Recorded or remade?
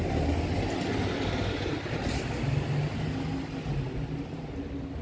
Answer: recorded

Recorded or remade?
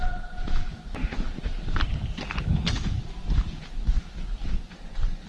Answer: recorded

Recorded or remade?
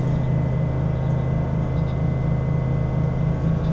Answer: recorded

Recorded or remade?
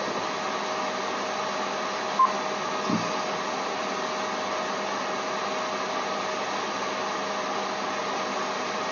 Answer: recorded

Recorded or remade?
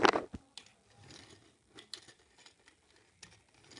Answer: recorded